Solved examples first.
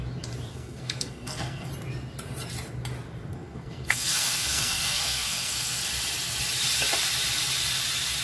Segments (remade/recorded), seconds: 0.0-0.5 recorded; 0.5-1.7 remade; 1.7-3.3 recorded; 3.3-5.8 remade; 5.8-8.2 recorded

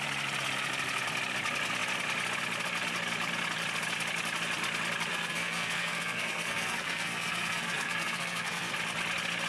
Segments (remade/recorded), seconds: 0.0-5.1 recorded; 5.1-8.7 remade; 8.7-9.5 recorded